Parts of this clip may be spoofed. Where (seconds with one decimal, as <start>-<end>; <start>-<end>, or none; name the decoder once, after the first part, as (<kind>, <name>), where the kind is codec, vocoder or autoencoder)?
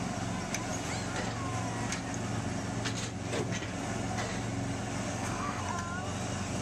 5.1-5.6 (codec, SNAC)